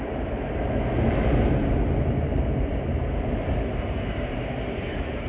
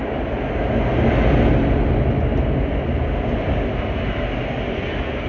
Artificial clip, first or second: first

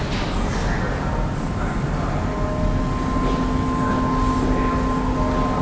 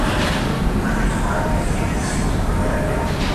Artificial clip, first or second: second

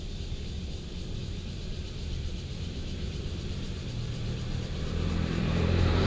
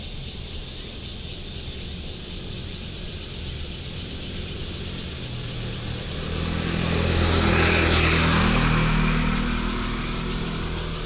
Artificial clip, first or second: first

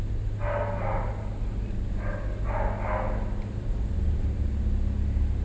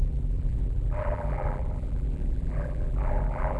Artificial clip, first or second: second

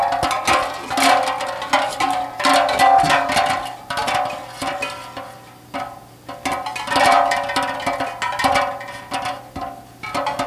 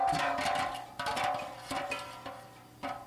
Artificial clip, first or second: second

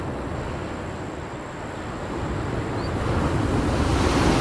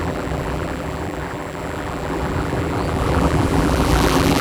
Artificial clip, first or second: second